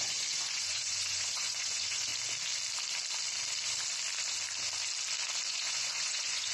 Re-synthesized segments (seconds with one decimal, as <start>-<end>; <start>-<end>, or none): 0.0-2.1; 5.5-6.5